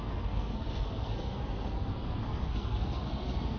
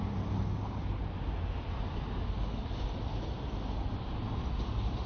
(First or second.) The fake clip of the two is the first